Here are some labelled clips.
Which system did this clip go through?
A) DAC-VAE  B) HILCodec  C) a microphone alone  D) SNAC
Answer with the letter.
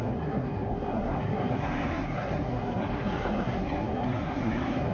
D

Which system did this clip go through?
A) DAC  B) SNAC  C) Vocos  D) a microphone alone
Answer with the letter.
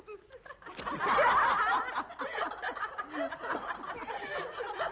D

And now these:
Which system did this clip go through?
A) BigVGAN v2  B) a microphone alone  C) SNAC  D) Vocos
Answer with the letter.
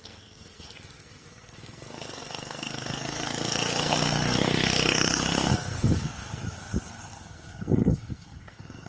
C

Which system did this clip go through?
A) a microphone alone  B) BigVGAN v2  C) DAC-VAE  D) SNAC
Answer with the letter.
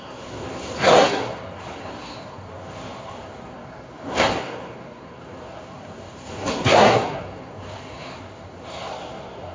D